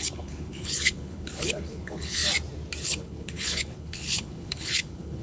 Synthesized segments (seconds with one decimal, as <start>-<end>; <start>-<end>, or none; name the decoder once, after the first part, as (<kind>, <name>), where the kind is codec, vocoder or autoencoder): 0.0-2.2 (codec, HILCodec); 2.8-5.2